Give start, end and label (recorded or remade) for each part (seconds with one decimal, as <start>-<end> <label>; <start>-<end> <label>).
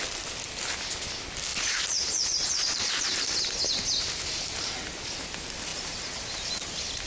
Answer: 0.0-1.5 recorded; 1.5-3.4 remade; 3.4-5.7 recorded; 5.7-6.5 remade; 6.5-7.1 recorded